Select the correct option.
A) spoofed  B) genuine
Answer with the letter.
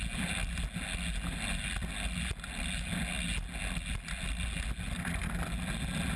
B